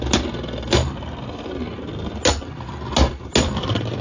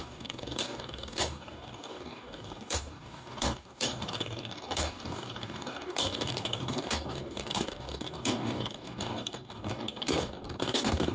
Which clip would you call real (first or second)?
first